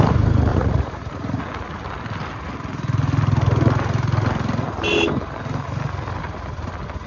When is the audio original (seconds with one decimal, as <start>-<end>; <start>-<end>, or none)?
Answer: 0.0-0.5; 1.4-7.1